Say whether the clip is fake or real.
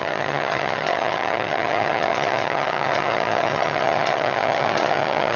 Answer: fake